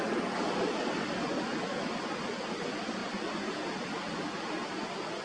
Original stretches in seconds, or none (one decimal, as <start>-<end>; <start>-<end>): 0.0-5.2

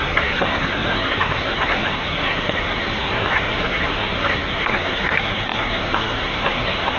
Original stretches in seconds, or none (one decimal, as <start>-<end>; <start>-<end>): none

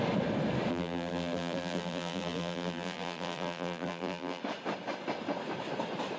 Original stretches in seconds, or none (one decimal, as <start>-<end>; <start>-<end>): 0.0-0.7; 4.4-6.2